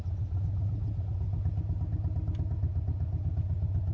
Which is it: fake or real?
real